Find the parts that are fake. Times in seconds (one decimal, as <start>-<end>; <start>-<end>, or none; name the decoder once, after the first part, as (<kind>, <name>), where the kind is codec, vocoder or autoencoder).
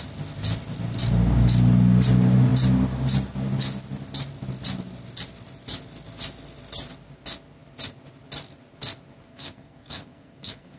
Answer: 9.3-10.8 (codec, SNAC)